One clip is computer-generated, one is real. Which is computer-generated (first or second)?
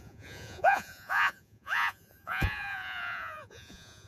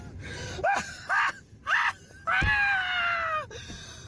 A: first